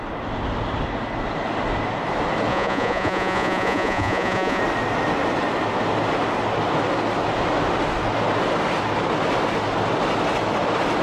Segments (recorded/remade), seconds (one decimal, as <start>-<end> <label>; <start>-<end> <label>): 0.0-2.5 recorded; 2.5-4.6 remade; 4.6-11.0 recorded